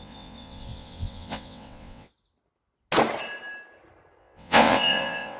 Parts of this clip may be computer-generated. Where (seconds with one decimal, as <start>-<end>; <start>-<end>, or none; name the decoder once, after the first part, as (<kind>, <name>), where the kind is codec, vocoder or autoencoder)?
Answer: 0.0-2.1 (vocoder, WaveNeXt); 4.2-5.4